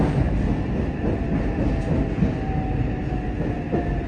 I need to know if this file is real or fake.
real